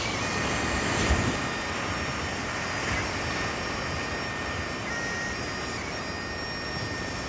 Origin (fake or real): real